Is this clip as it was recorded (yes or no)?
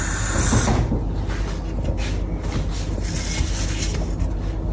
yes